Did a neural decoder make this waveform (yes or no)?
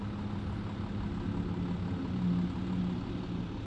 no